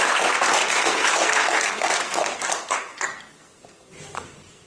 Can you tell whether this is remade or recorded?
remade